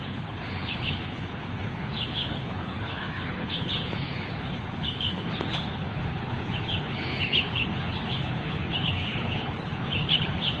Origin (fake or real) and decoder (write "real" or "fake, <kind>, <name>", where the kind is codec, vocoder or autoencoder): fake, codec, HILCodec